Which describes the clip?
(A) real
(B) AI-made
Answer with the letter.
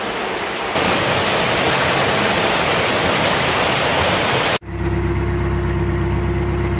A